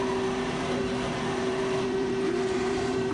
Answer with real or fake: fake